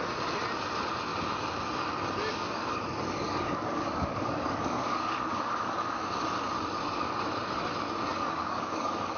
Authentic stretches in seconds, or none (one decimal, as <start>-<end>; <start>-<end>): 0.0-2.4; 6.0-8.1